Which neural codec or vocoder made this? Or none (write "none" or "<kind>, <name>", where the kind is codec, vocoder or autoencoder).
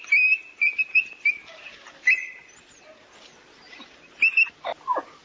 none